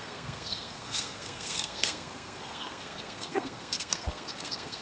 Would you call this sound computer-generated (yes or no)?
yes